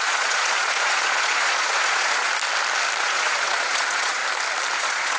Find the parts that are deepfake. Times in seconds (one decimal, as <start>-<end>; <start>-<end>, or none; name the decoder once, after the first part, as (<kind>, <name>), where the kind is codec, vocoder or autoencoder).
0.0-2.3 (vocoder, Vocos); 3.0-4.2; 4.8-5.2